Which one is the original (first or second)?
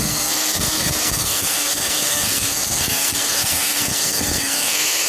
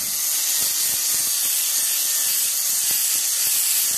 second